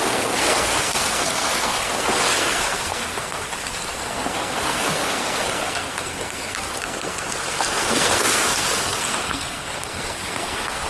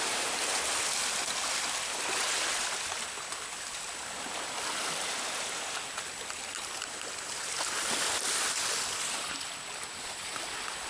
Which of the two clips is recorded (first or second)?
second